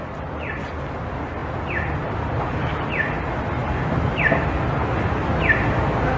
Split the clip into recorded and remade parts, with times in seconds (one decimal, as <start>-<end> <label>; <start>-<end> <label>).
0.0-6.2 recorded